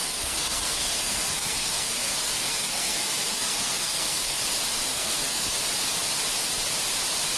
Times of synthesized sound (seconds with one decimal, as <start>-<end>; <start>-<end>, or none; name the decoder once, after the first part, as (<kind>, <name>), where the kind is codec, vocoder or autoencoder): 0.0-4.4 (codec, SNAC); 4.9-5.6